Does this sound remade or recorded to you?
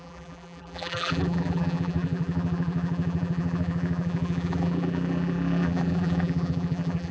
remade